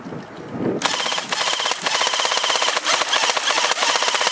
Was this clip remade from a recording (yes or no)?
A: no